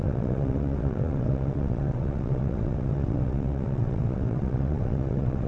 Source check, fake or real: fake